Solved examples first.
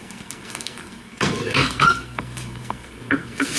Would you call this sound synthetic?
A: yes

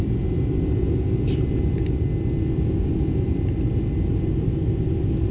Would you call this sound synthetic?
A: no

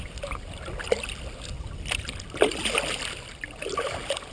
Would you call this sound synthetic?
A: no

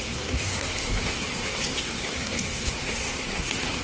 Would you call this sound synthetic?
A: yes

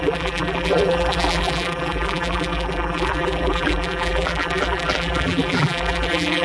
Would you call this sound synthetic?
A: yes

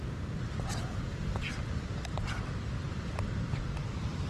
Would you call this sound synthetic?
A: no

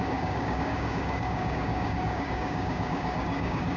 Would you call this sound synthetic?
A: yes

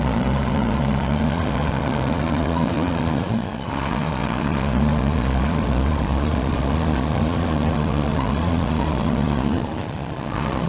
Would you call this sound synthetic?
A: yes